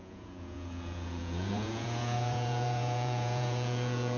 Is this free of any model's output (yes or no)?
no